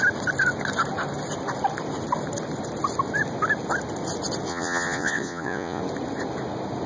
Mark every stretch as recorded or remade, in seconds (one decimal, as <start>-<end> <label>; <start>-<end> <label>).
0.0-4.5 recorded; 4.5-5.8 remade; 5.8-6.9 recorded